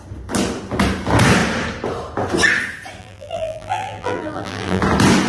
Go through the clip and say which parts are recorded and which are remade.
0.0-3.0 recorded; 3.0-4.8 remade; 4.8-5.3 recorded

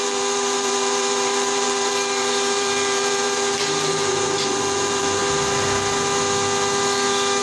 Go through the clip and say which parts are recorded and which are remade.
0.0-5.2 remade; 5.2-7.4 recorded